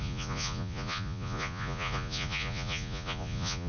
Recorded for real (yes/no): no